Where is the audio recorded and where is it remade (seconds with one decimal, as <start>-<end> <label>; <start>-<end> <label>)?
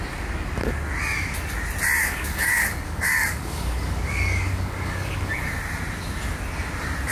0.0-2.0 recorded; 2.0-5.3 remade; 5.3-7.1 recorded